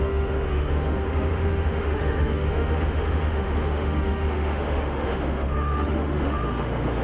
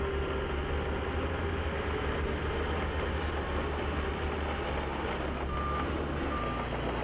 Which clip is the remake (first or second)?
first